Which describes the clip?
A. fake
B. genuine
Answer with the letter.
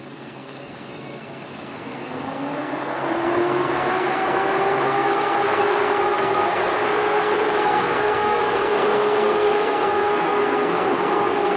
A